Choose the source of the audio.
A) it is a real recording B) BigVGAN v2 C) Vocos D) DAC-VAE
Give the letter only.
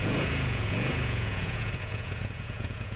C